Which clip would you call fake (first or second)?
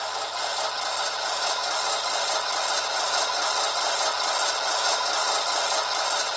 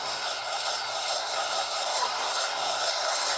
second